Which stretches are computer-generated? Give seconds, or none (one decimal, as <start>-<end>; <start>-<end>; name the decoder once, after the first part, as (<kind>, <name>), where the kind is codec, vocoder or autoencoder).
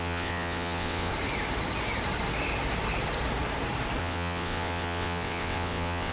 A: 0.0-1.1 (vocoder, WaveNeXt); 4.0-6.1